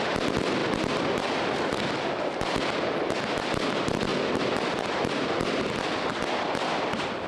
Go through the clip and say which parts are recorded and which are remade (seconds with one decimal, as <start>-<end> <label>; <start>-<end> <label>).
0.0-4.1 recorded; 4.1-5.6 remade; 5.6-7.3 recorded